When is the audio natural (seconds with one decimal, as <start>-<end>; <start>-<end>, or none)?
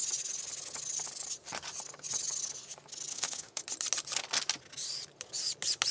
0.0-3.1; 3.6-5.9